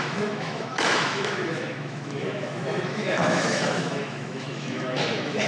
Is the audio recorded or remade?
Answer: remade